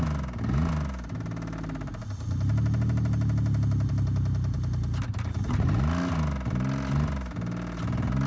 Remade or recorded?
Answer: recorded